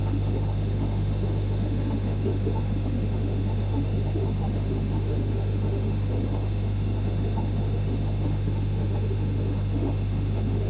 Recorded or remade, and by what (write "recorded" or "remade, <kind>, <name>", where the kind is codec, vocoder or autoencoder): remade, autoencoder, DAC-VAE